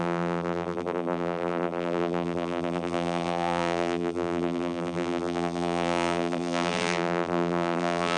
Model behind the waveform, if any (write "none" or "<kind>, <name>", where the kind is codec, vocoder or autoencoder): vocoder, BigVGAN v2